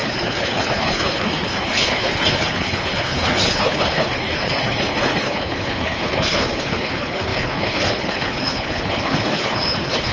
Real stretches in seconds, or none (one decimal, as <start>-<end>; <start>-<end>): none